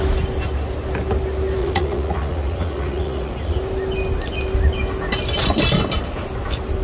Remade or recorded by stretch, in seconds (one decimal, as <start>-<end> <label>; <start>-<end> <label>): 0.0-1.6 recorded; 1.6-3.6 remade; 3.6-6.8 recorded